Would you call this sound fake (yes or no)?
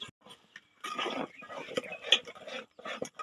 no